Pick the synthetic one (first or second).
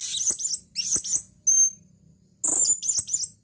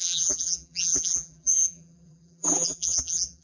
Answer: second